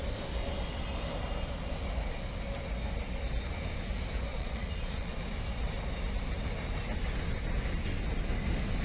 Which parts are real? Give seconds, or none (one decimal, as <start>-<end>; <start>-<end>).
0.0-4.3; 5.2-8.8